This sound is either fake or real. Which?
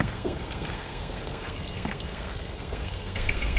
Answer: fake